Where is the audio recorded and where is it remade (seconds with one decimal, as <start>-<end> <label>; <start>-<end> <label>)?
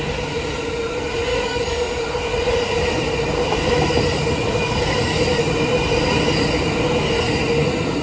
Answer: 0.0-1.3 recorded; 1.3-2.0 remade; 2.0-8.0 recorded